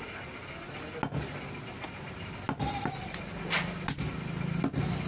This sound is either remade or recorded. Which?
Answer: recorded